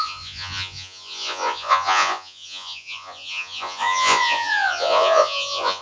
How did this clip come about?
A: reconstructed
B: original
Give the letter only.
A